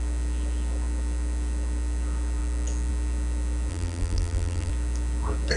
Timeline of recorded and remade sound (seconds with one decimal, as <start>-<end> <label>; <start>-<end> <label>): 0.0-3.7 recorded; 3.7-4.7 remade; 4.7-5.6 recorded

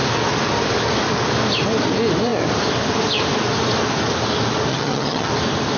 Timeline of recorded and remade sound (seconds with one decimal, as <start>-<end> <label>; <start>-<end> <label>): 0.0-4.7 recorded; 4.7-5.3 remade; 5.3-5.8 recorded

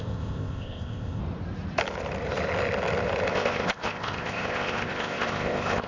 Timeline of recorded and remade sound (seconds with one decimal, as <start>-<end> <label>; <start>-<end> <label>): 0.0-1.2 remade; 1.2-3.3 recorded; 3.3-5.9 remade